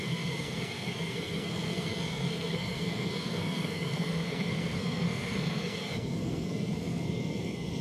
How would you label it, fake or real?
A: fake